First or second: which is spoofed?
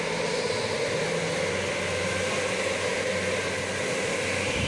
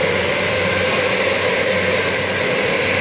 second